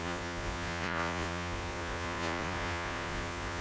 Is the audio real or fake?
fake